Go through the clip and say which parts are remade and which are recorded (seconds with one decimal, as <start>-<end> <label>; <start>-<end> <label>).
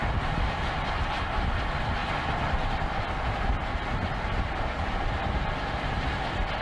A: 0.0-1.4 remade; 1.4-2.0 recorded; 2.0-3.0 remade; 3.0-4.3 recorded; 4.3-4.9 remade; 4.9-6.6 recorded